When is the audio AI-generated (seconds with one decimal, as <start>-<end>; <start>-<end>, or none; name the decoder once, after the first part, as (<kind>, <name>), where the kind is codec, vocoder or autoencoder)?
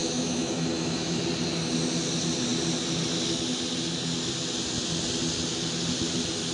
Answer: 0.0-1.2 (autoencoder, DAC-VAE)